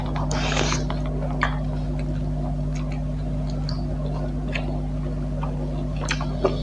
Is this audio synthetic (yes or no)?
no